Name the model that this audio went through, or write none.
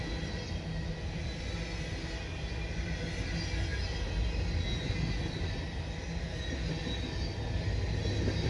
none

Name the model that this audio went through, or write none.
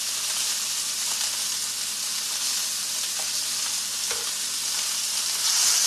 none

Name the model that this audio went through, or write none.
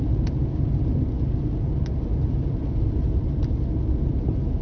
none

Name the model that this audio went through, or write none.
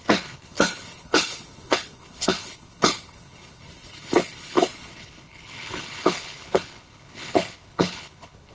codec, HILCodec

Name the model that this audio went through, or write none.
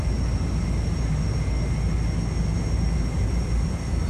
none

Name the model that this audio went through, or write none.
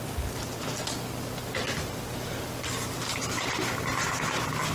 vocoder, BigVGAN v2